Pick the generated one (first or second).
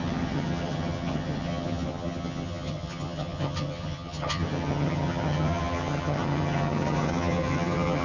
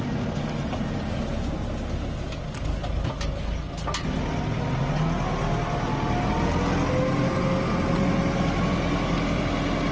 first